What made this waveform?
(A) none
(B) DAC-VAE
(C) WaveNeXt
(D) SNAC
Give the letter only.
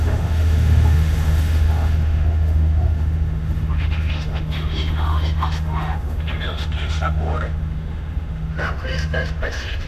B